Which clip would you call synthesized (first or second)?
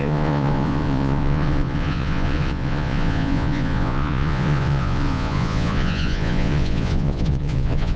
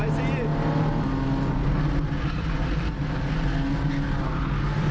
first